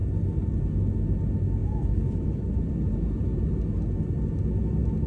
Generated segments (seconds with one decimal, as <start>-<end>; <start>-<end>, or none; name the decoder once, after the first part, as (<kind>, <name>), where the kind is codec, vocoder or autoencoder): 1.6-2.5 (autoencoder, DAC-VAE)